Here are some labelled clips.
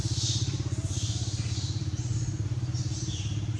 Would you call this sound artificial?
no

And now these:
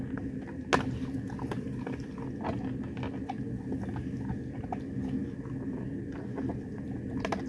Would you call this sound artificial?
no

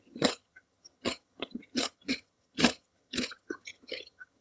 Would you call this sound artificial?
yes